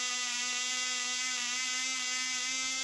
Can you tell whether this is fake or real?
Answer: real